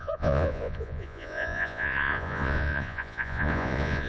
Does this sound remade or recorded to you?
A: remade